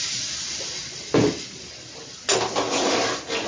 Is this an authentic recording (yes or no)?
yes